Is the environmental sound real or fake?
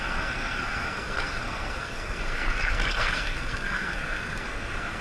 fake